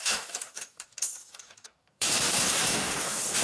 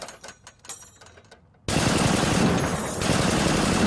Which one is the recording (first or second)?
second